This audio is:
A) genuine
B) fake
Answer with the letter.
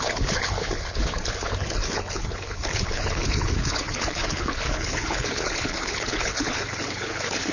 B